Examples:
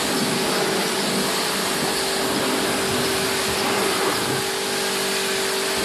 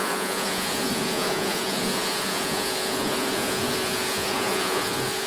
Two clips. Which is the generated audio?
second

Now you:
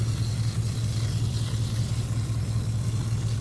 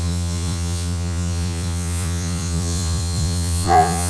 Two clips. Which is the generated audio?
second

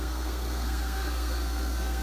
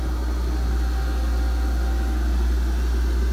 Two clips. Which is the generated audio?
first